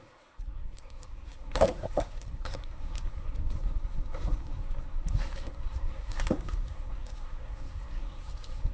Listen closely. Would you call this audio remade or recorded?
remade